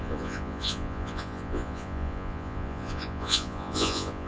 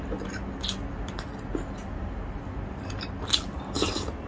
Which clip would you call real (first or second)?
second